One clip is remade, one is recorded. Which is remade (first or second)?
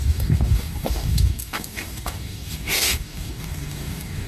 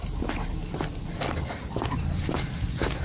first